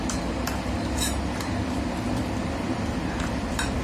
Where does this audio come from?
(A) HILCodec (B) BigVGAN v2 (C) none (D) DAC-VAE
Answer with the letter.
B